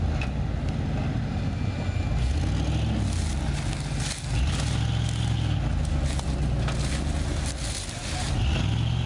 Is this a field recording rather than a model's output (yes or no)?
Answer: yes